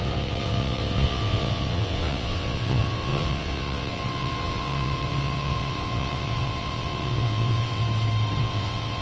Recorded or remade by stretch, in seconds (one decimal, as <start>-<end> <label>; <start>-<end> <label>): 0.0-7.8 remade; 7.8-8.4 recorded; 8.4-9.0 remade